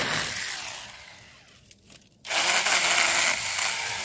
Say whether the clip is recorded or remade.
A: recorded